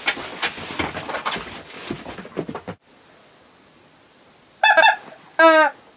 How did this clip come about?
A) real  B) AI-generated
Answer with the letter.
A